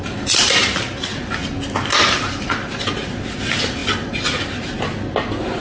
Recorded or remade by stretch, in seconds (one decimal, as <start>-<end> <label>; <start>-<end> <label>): 0.0-5.6 recorded